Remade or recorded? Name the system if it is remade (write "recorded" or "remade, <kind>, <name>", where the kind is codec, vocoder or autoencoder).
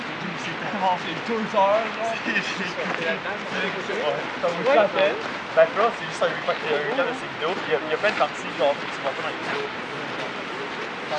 recorded